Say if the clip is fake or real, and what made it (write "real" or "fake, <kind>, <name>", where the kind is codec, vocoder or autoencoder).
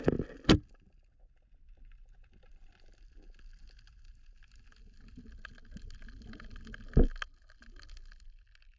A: real